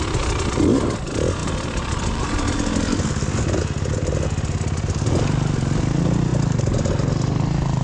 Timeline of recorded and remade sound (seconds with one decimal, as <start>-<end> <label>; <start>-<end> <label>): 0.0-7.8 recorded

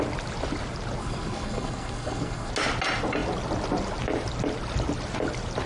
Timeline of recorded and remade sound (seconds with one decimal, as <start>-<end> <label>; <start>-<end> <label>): 0.0-1.0 recorded; 1.0-2.5 remade; 2.5-5.7 recorded

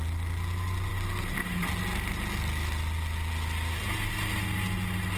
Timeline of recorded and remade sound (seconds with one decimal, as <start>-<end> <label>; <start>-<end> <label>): 0.0-5.2 recorded

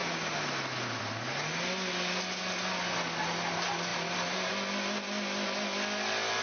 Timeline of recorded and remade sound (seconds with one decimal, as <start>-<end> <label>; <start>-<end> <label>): 0.0-6.4 recorded